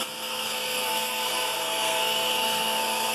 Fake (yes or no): yes